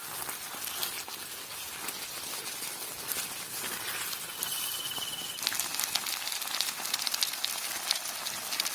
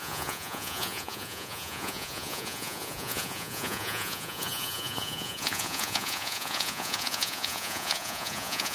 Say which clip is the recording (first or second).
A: first